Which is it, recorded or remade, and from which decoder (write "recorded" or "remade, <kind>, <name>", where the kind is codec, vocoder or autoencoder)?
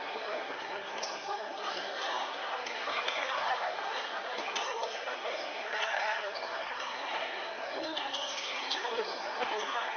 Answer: remade, codec, SNAC